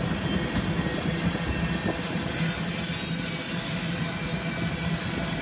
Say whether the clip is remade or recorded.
recorded